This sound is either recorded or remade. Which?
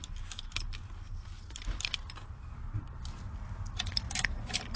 recorded